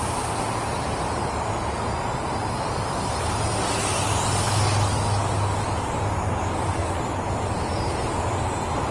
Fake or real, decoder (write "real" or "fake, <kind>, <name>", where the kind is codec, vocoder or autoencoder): real